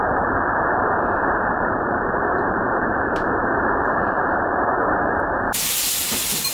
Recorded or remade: remade